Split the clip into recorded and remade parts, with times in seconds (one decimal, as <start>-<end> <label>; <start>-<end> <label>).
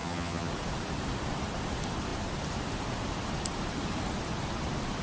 0.0-0.5 remade; 0.5-5.0 recorded